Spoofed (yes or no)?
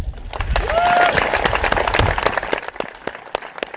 no